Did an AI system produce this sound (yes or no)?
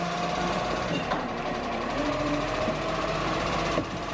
yes